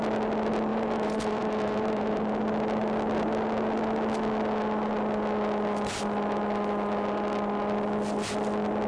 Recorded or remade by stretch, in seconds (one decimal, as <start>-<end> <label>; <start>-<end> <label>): 0.0-0.7 recorded; 0.7-2.3 remade; 2.3-8.9 recorded